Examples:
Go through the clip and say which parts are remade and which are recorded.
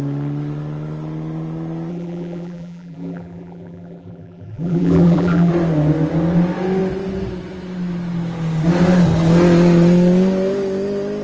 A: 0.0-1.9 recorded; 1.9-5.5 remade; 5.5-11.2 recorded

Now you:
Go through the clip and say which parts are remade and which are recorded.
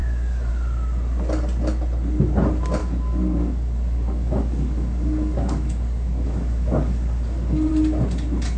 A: 0.0-0.5 remade; 0.5-2.8 recorded; 2.8-7.7 remade; 7.7-8.6 recorded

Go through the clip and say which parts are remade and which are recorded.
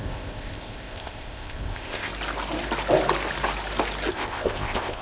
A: 0.0-2.1 remade; 2.1-4.1 recorded; 4.1-5.0 remade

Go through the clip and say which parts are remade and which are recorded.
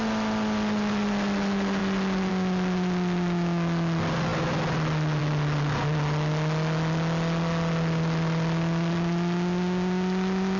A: 0.0-10.6 recorded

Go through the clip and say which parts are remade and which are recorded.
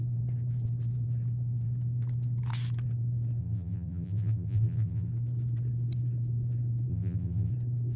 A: 0.0-3.4 recorded; 3.4-5.1 remade; 5.1-6.9 recorded; 6.9-7.5 remade; 7.5-8.0 recorded